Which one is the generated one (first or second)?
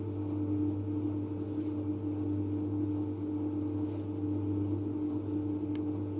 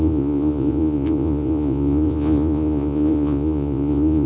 second